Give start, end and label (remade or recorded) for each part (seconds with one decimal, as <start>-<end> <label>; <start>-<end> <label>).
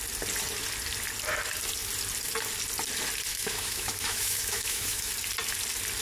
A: 0.0-3.3 recorded; 3.3-5.1 remade; 5.1-6.0 recorded